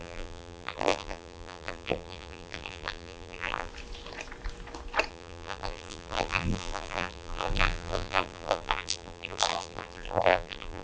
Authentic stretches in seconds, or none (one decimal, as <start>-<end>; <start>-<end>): 3.7-5.1